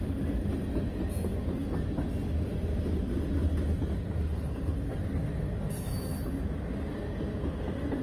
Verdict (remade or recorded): recorded